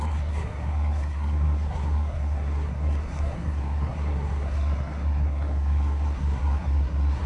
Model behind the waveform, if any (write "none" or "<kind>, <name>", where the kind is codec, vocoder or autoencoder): codec, SNAC